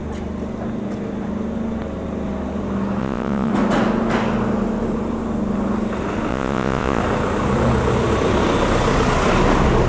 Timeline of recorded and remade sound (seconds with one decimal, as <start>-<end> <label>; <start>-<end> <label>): 0.0-3.0 recorded; 3.0-3.5 remade; 3.5-6.3 recorded; 6.3-7.0 remade; 7.0-9.9 recorded